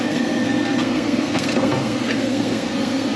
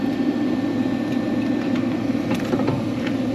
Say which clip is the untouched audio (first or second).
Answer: second